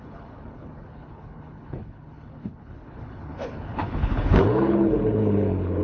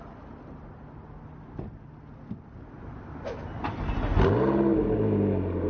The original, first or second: second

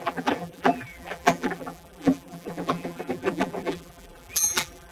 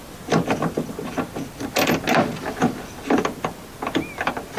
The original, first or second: second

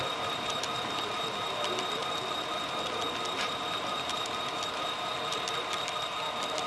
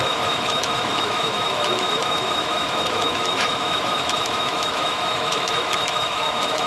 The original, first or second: first